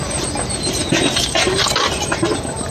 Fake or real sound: real